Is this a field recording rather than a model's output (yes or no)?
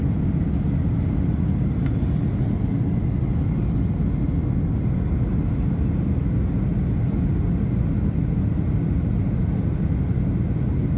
yes